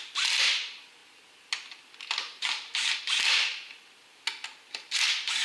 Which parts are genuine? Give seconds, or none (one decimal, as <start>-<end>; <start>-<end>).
0.0-5.4